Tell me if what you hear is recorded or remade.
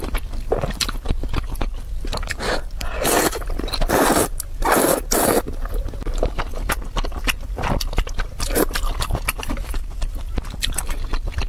remade